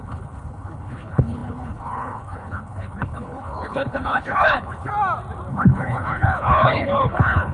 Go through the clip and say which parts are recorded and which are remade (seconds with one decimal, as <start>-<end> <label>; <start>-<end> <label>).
0.0-4.9 remade; 4.9-5.5 recorded; 5.5-7.5 remade